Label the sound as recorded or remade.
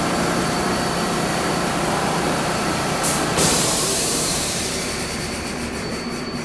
remade